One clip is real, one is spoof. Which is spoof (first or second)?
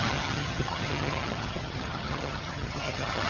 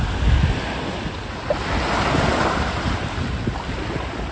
first